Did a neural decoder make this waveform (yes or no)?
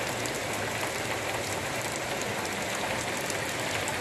no